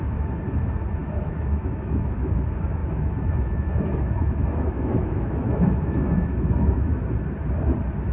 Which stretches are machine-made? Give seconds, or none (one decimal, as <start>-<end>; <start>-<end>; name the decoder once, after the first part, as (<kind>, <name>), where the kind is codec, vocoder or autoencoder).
1.0-2.3 (autoencoder, DAC-VAE); 2.8-7.0